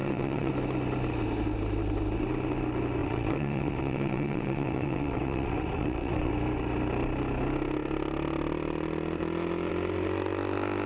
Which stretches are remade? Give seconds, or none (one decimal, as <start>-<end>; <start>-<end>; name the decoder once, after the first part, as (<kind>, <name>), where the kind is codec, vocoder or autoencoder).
0.0-0.5 (vocoder, WaveNeXt); 3.0-6.3